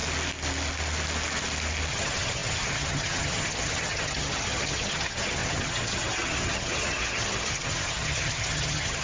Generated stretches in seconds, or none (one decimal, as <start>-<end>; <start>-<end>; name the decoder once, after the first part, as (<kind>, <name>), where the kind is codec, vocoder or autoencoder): 1.9-9.0 (vocoder, HiFi-GAN)